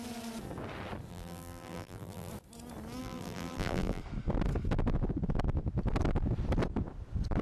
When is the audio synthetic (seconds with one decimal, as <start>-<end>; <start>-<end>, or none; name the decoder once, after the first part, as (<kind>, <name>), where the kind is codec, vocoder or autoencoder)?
1.1-2.3 (vocoder, BigVGAN v2); 3.0-4.0